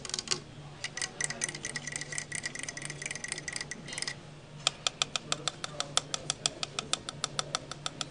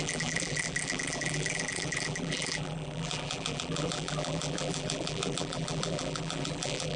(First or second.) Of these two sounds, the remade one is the second